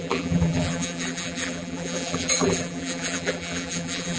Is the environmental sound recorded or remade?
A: remade